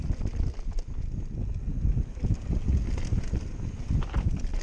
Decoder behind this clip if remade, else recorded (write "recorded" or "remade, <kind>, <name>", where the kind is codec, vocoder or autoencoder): recorded